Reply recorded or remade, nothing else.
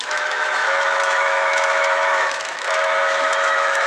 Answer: remade